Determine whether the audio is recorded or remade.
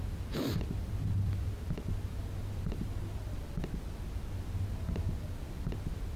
remade